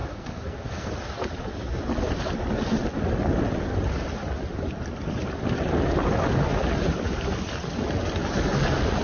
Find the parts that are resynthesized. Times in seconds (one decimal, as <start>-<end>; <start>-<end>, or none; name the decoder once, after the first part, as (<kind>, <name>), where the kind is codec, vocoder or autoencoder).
0.0-0.9 (codec, SNAC)

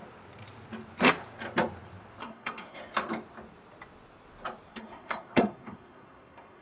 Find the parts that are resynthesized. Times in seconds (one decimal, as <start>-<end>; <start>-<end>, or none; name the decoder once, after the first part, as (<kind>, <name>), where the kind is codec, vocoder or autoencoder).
2.2-2.8 (codec, SNAC); 4.7-6.6

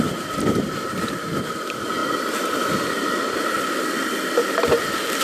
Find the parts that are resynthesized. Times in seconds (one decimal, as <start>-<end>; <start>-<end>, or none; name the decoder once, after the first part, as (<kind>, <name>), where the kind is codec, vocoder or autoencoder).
none

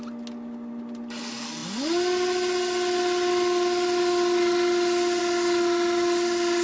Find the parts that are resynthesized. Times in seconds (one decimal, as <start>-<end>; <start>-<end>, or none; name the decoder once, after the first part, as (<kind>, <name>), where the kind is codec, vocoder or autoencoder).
none

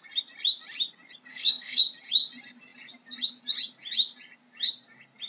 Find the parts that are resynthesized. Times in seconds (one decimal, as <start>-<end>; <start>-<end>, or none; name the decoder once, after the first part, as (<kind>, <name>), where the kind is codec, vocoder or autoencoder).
1.3-1.8 (codec, SNAC)

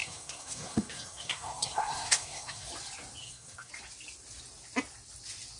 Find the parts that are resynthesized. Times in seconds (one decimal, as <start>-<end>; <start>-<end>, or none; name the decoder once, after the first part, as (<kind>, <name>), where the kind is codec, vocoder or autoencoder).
0.0-2.7 (codec, SNAC); 3.2-3.7

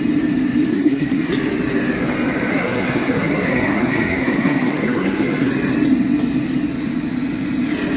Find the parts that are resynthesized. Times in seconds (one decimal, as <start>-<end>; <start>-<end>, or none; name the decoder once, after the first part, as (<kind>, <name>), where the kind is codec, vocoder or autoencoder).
0.7-1.3 (codec, SNAC); 2.5-5.5